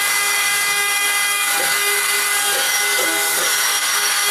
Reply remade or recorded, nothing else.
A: remade